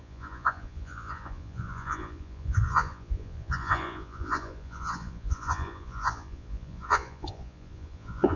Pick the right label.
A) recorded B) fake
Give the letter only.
B